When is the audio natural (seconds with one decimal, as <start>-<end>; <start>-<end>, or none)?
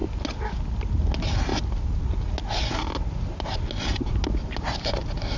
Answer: 0.0-5.4